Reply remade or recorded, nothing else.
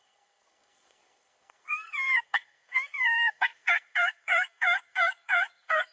remade